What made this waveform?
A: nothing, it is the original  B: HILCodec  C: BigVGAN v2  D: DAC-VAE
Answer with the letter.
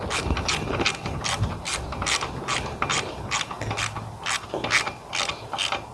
A